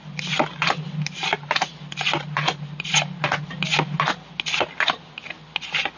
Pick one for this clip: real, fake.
real